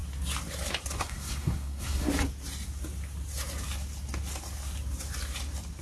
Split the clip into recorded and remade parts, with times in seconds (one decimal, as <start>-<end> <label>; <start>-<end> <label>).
0.0-1.0 recorded; 1.0-2.1 remade; 2.1-5.8 recorded